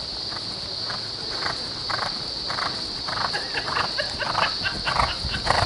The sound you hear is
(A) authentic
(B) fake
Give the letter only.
A